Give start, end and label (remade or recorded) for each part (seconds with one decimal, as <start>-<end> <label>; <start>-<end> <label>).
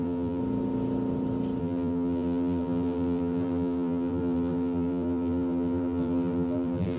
0.0-0.4 remade; 0.4-1.6 recorded; 1.6-7.0 remade